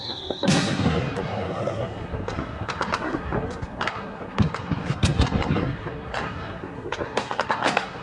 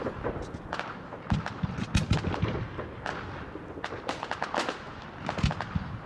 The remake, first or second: first